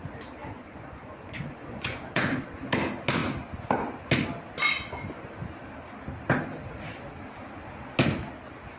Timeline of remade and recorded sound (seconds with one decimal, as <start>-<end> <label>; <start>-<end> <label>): 0.0-0.4 recorded; 0.4-2.3 remade; 2.3-8.8 recorded